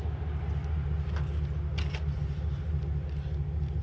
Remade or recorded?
recorded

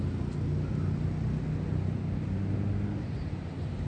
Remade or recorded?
recorded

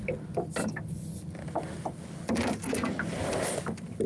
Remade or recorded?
recorded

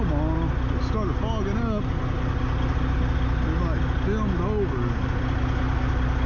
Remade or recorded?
recorded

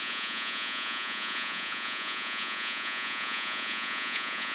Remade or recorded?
remade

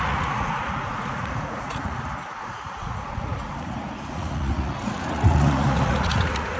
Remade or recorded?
remade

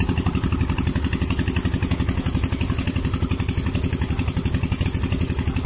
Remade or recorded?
recorded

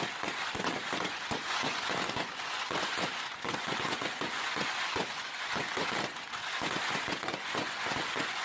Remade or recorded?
remade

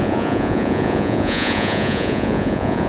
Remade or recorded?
remade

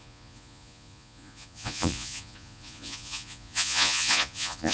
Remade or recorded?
remade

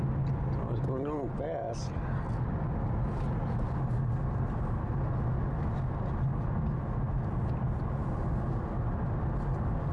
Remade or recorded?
recorded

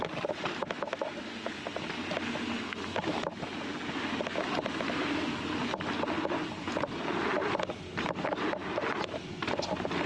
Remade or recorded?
recorded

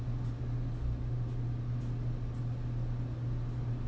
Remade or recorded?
recorded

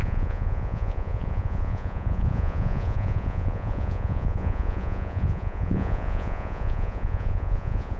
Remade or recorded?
remade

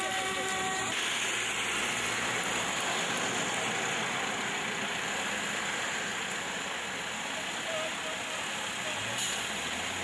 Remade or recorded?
recorded